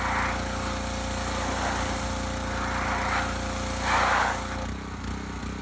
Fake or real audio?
real